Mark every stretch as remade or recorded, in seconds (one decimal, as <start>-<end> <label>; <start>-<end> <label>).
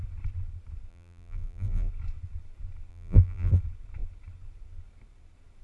0.0-0.9 recorded; 0.9-1.9 remade; 1.9-2.9 recorded; 2.9-3.6 remade; 3.6-5.6 recorded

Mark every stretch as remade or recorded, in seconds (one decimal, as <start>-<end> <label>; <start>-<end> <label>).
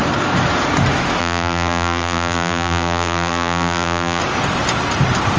0.0-1.2 recorded; 1.2-4.2 remade; 4.2-5.4 recorded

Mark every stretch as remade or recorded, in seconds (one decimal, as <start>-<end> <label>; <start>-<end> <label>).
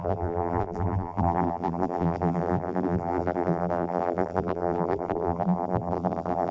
0.0-6.5 remade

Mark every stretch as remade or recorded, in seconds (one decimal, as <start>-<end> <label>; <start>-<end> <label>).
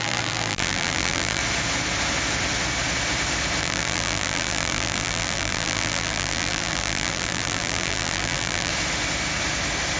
0.0-1.4 remade; 1.4-3.6 recorded; 3.6-8.7 remade; 8.7-10.0 recorded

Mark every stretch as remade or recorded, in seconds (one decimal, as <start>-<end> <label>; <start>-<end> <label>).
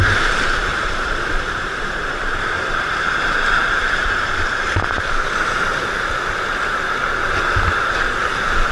0.0-0.7 recorded; 0.7-4.1 remade; 4.1-8.7 recorded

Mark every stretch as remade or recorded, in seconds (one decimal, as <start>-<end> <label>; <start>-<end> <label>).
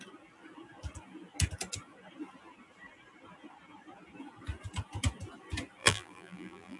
0.0-5.8 recorded; 5.8-6.8 remade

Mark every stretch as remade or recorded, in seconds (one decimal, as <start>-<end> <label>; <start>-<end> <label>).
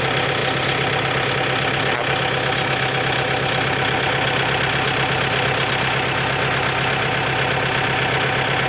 0.0-8.7 recorded